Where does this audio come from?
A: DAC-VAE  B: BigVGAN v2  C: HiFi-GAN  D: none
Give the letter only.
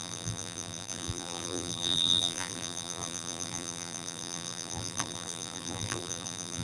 B